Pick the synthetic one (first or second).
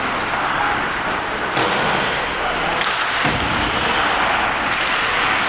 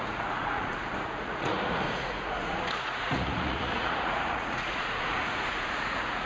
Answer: second